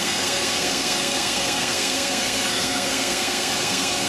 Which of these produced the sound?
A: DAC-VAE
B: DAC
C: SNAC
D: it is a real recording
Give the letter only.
C